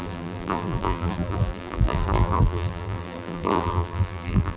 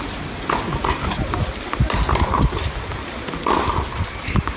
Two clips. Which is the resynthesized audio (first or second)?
first